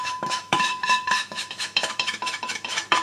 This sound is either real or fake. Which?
fake